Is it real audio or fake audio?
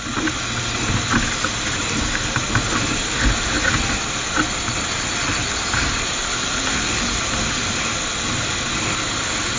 real